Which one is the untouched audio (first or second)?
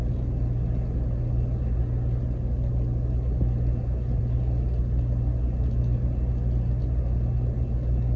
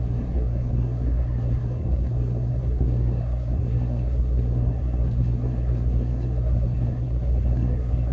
first